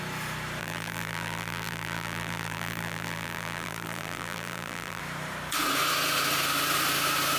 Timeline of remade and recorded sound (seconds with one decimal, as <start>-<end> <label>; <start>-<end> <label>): 0.0-0.6 recorded; 0.6-5.0 remade; 5.0-7.4 recorded